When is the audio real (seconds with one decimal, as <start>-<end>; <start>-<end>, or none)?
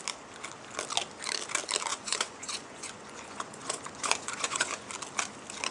0.0-1.9; 4.9-5.7